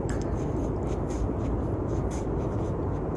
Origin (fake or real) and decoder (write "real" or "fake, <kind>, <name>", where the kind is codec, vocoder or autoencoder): real